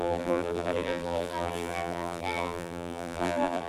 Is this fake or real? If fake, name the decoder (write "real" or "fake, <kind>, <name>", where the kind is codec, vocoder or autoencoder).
fake, vocoder, BigVGAN v2